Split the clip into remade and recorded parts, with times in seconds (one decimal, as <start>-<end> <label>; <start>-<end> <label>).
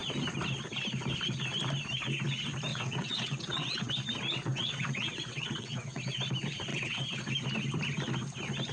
0.0-2.7 recorded; 2.7-3.9 remade; 3.9-4.5 recorded; 4.5-6.0 remade; 6.0-6.7 recorded; 6.7-7.2 remade; 7.2-8.7 recorded